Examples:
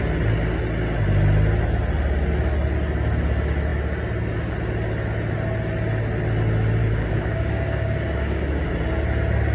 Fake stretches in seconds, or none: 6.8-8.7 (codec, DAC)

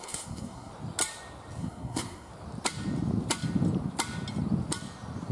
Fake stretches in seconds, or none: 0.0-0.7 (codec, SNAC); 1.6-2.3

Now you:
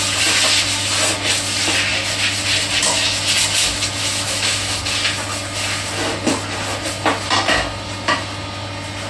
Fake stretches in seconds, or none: 4.0-4.8 (autoencoder, DAC-VAE)

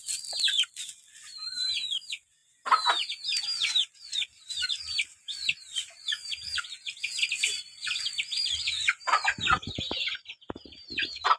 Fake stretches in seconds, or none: 0.0-2.4 (vocoder, BigVGAN v2); 3.7-11.4